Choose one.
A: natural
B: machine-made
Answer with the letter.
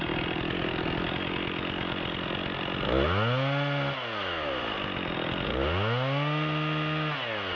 A